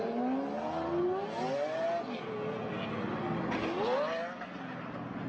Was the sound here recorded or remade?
recorded